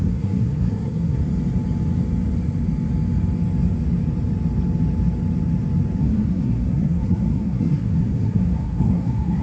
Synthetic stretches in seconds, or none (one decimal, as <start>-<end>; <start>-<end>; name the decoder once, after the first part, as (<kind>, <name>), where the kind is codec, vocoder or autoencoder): 0.0-1.2 (codec, SNAC); 6.0-9.4